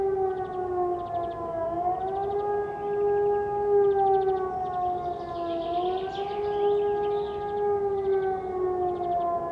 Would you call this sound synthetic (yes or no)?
no